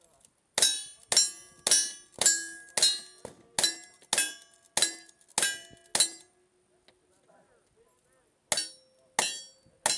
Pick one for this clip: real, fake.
real